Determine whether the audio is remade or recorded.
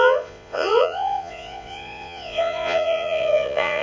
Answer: remade